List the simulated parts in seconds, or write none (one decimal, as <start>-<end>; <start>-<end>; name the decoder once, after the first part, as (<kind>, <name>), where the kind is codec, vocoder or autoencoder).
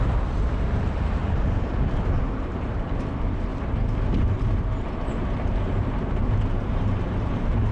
0.0-1.2 (vocoder, BigVGAN v2); 2.3-7.7